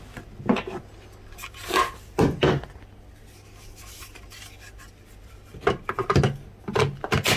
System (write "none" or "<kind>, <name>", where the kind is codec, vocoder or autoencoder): none